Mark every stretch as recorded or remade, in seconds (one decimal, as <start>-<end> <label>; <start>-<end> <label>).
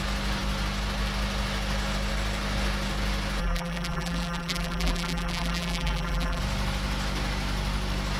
0.0-3.4 recorded; 3.4-6.4 remade; 6.4-8.2 recorded